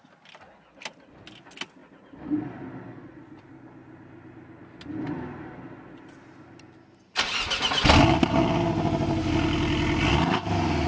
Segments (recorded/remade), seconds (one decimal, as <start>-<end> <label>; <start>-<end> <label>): 0.0-10.9 recorded